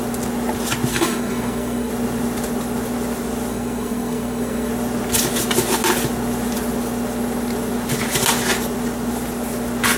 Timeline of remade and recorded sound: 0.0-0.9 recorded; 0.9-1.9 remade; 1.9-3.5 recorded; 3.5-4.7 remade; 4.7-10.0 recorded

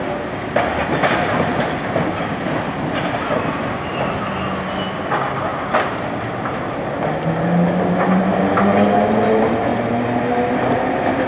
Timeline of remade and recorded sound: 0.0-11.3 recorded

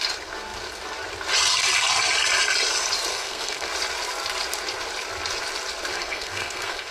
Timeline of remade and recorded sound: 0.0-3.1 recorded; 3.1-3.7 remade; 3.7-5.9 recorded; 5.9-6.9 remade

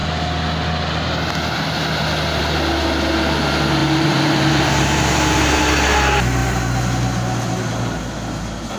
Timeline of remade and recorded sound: 0.0-3.8 recorded; 3.8-5.6 remade; 5.6-8.8 recorded